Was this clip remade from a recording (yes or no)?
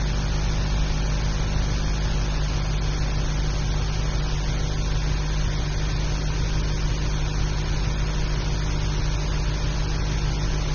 no